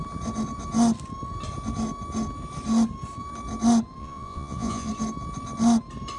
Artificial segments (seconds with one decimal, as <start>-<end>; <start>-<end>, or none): 4.0-4.9